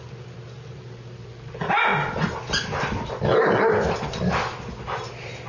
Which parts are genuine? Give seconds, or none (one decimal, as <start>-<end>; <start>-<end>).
0.0-5.5